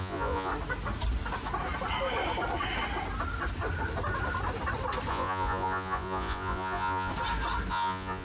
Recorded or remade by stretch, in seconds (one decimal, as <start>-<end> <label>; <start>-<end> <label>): 0.0-0.5 remade; 0.5-5.1 recorded; 5.1-7.1 remade; 7.1-7.7 recorded; 7.7-8.2 remade